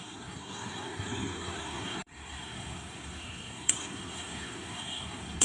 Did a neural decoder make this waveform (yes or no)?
yes